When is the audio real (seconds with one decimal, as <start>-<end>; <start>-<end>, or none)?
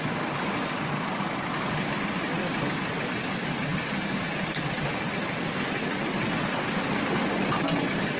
0.0-8.2